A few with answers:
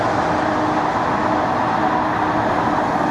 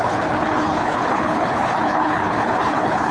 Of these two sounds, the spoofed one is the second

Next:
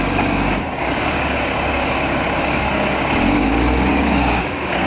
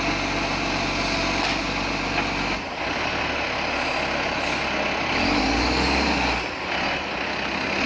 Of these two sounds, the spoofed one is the first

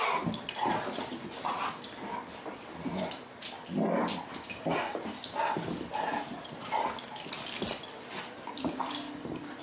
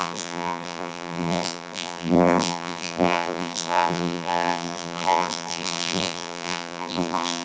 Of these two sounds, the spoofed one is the second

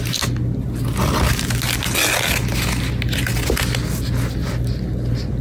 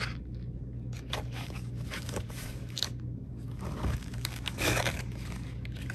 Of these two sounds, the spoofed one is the second